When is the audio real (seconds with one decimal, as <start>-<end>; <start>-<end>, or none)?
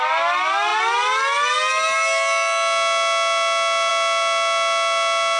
0.0-5.4